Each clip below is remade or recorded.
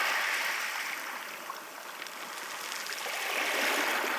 recorded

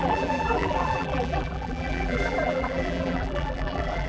remade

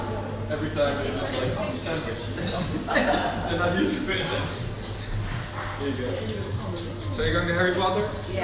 recorded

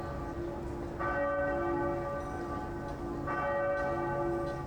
recorded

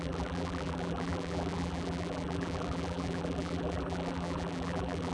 remade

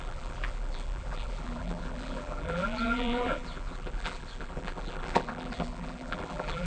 remade